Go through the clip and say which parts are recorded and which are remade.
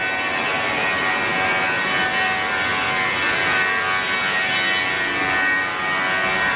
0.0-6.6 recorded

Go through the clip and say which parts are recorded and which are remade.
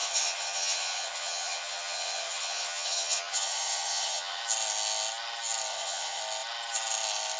0.0-4.4 remade; 4.4-5.7 recorded; 5.7-6.2 remade; 6.2-7.4 recorded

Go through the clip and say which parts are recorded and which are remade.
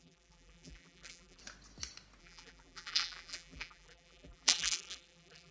0.0-1.4 remade; 1.4-2.2 recorded; 2.2-5.5 remade